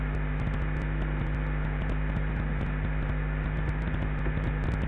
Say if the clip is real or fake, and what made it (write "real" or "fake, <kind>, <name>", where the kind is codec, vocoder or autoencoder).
real